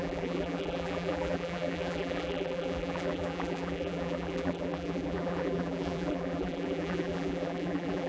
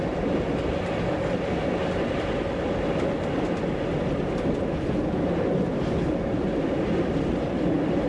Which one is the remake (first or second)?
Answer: first